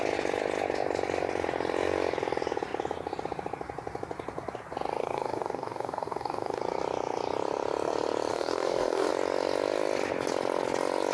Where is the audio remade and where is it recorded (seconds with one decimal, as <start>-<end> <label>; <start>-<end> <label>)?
0.0-5.0 recorded; 5.0-6.6 remade; 6.6-8.3 recorded; 8.3-9.1 remade; 9.1-11.1 recorded